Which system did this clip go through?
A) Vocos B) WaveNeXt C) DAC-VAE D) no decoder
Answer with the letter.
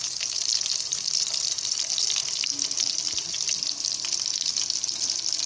D